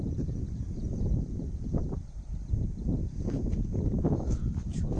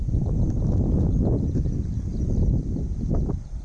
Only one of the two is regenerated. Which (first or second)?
first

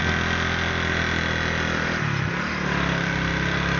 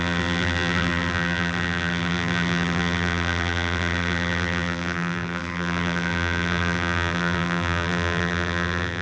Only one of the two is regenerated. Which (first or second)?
second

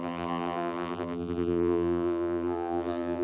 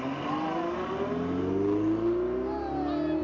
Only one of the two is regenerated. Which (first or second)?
first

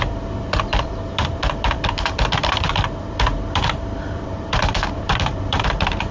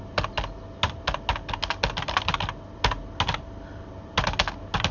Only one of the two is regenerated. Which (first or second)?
first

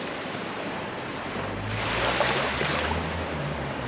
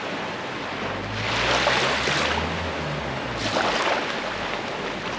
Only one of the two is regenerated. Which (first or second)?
first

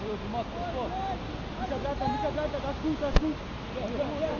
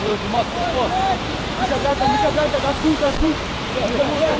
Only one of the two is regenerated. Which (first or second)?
second